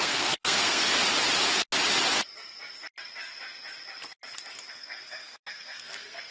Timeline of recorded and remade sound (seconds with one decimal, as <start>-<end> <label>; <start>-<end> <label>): 0.0-0.9 remade; 0.9-4.7 recorded; 4.7-6.3 remade